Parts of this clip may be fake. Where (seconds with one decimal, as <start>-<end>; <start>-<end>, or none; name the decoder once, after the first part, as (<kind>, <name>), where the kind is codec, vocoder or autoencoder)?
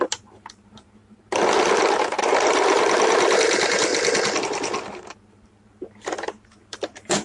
0.0-1.0 (vocoder, BigVGAN v2); 2.2-3.9; 4.4-7.2